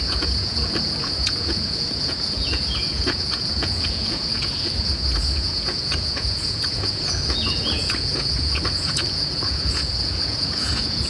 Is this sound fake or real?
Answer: fake